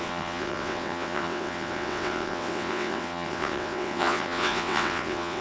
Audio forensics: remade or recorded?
remade